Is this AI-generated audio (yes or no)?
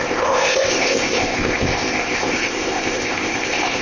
yes